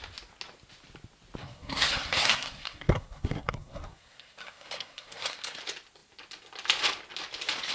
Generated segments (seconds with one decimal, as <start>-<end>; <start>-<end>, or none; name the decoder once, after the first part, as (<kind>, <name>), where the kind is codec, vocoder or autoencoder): 1.4-5.6 (codec, SNAC)